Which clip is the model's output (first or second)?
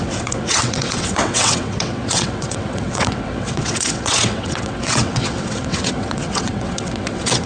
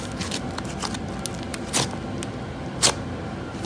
first